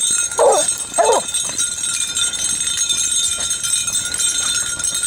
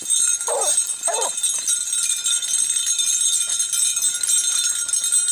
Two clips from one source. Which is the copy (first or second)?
first